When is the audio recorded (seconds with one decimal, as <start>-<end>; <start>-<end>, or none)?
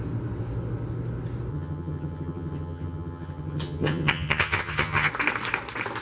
0.0-1.5; 5.1-6.0